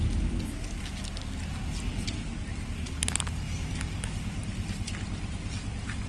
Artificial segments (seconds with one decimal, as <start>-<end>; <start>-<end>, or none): 1.6-3.0